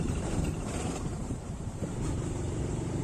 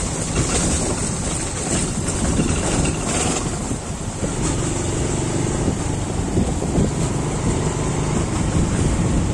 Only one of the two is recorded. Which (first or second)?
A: second